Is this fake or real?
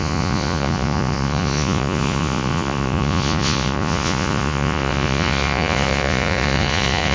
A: fake